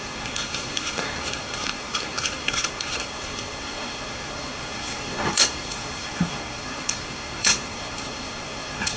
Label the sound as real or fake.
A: fake